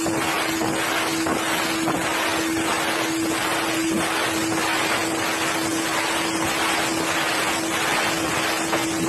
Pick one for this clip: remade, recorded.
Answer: recorded